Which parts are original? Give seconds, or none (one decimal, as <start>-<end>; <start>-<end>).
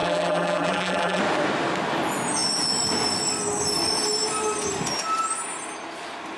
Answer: 1.2-6.4